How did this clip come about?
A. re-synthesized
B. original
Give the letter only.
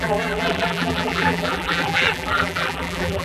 A